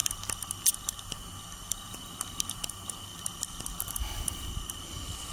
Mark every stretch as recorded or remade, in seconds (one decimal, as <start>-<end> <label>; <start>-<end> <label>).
0.0-5.3 recorded